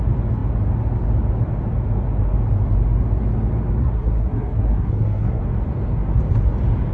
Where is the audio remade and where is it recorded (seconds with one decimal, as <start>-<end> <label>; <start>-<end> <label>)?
0.0-3.8 recorded; 3.8-5.4 remade; 5.4-6.9 recorded